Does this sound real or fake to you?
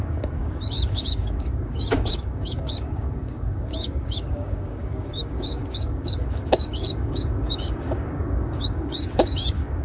fake